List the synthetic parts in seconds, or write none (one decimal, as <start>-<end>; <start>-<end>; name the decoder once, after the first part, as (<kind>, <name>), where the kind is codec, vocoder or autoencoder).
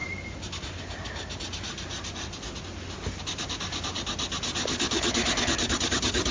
none